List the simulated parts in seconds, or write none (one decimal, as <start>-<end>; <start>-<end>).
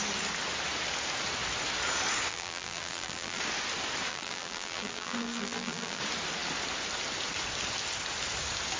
2.3-3.4; 4.1-6.0